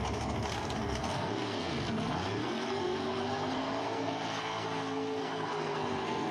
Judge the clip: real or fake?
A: fake